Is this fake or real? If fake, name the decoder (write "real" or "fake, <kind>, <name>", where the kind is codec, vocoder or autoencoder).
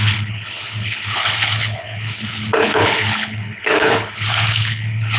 fake, codec, HILCodec